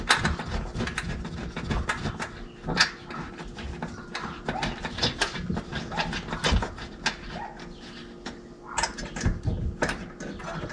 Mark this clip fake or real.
real